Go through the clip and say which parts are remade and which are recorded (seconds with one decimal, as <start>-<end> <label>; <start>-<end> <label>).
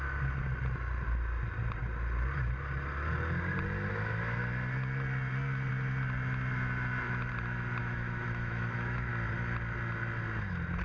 0.0-7.8 recorded; 7.8-9.1 remade; 9.1-10.8 recorded